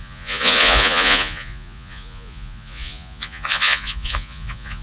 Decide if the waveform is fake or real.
fake